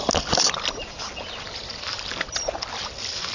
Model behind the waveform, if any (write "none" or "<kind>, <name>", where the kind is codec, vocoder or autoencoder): none